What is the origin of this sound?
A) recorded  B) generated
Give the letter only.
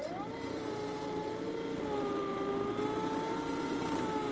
A